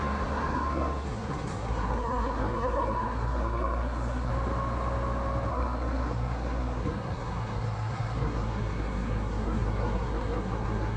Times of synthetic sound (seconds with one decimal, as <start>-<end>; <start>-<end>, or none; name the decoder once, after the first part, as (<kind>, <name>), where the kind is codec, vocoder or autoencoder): 0.0-4.3 (codec, SNAC); 5.5-11.0